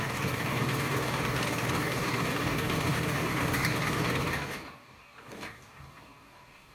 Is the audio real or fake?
fake